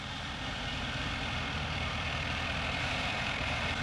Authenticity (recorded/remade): remade